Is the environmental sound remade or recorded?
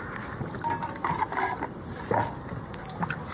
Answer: recorded